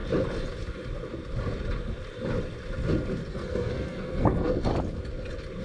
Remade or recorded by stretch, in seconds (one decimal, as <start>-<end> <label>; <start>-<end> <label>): 0.0-3.3 recorded; 3.3-4.7 remade; 4.7-5.6 recorded